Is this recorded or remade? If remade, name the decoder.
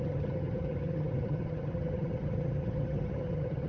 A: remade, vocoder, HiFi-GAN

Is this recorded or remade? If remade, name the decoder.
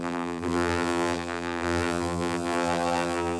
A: remade, vocoder, BigVGAN v2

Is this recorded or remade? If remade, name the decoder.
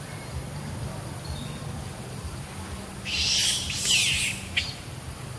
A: recorded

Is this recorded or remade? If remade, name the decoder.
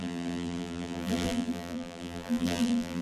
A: remade, vocoder, BigVGAN v2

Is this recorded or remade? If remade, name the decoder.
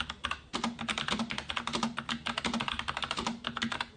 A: recorded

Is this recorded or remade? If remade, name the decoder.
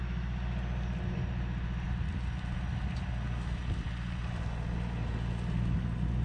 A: recorded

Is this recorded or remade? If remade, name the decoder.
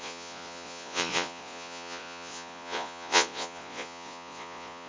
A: remade, vocoder, Vocos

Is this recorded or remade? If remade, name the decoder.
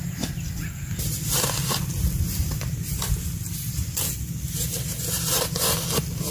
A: recorded